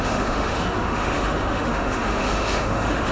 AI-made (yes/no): yes